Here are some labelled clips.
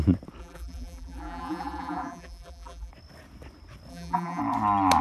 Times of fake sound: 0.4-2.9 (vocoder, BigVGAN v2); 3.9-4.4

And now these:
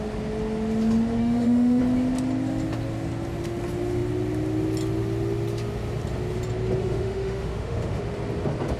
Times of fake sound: 1.2-1.8 (autoencoder, DAC-VAE); 6.8-8.0

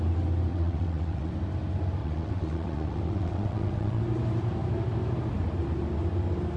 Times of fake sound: 0.5-1.3 (vocoder, WaveNeXt); 2.0-4.0

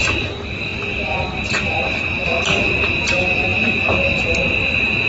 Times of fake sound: none

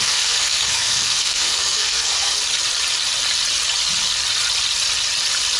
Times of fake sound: 0.0-2.4 (codec, SNAC)

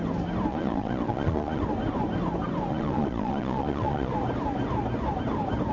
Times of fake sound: 0.5-1.6 (vocoder, Vocos); 2.7-4.1

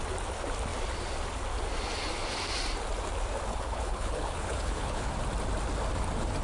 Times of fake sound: 3.5-5.1 (codec, HILCodec)

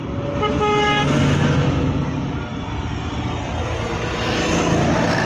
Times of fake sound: none